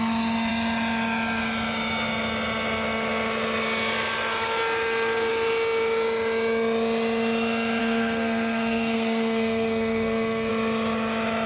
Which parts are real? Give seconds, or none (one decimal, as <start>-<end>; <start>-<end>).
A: 0.0-7.8; 10.5-11.5